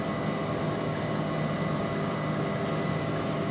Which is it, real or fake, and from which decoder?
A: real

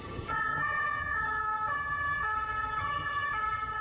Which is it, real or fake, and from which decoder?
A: fake, vocoder, HiFi-GAN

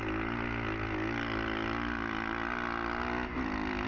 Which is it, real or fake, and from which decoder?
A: real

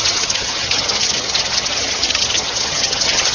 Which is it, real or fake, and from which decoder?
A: fake, vocoder, HiFi-GAN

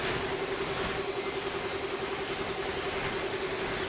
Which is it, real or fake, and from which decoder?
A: real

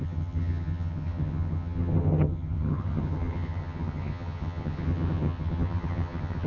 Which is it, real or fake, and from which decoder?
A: fake, vocoder, HiFi-GAN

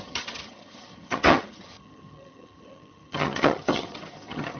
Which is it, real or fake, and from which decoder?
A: fake, vocoder, HiFi-GAN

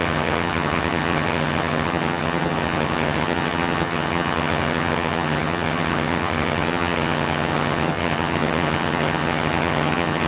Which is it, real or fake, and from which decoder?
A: fake, vocoder, HiFi-GAN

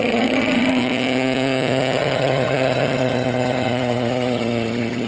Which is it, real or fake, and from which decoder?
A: fake, vocoder, HiFi-GAN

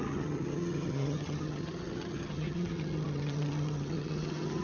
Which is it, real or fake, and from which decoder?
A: fake, vocoder, HiFi-GAN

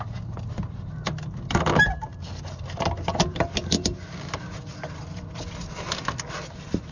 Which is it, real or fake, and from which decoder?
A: real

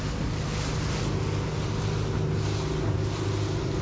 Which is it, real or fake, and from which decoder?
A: real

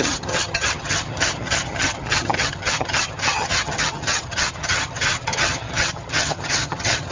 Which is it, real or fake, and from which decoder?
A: fake, vocoder, HiFi-GAN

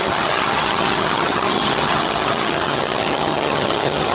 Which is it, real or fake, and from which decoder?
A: fake, vocoder, HiFi-GAN